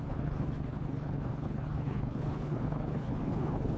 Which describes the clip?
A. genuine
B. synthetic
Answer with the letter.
B